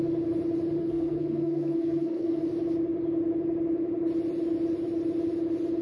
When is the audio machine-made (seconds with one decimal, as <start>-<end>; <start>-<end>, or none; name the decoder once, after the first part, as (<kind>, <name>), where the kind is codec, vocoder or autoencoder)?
0.8-2.4 (codec, SNAC)